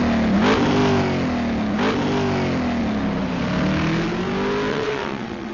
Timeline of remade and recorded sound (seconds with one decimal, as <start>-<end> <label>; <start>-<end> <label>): 0.0-4.7 recorded; 4.7-5.5 remade